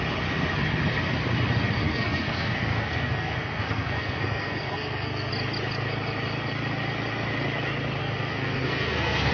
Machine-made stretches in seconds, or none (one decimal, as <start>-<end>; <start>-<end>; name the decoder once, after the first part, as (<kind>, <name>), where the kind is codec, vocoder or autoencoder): 1.8-5.3 (codec, SNAC); 8.0-9.3